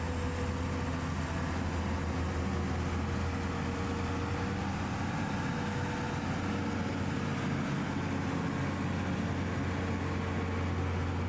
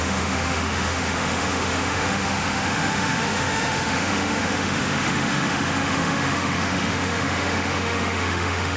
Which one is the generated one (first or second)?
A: second